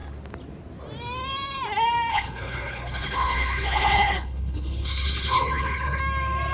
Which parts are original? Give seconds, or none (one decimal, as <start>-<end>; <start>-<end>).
0.0-2.1; 6.0-6.5